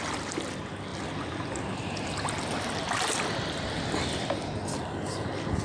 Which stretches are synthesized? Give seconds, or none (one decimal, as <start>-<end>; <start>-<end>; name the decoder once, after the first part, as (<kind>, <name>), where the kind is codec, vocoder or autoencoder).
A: 0.9-4.3 (vocoder, BigVGAN v2)